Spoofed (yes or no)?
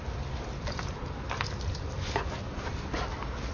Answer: no